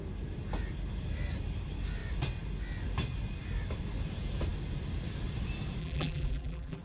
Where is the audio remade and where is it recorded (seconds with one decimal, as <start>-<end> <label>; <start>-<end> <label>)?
0.0-5.8 recorded; 5.8-6.8 remade